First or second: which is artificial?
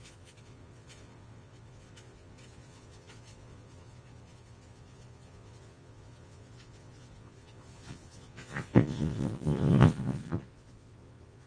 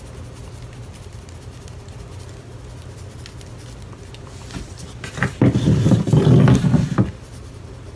first